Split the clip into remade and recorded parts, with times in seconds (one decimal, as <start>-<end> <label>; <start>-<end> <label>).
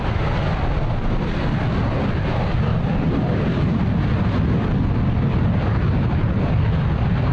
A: 0.0-7.3 recorded